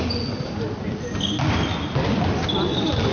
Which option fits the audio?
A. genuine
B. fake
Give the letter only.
A